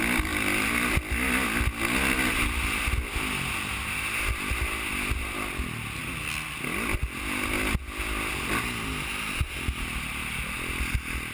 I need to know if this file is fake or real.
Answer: real